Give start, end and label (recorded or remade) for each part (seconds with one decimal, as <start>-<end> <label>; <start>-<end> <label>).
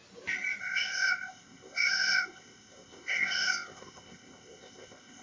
0.0-0.6 recorded; 0.6-5.2 remade